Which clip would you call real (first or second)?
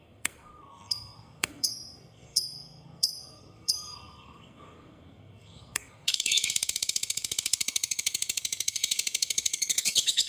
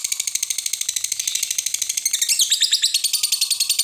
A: second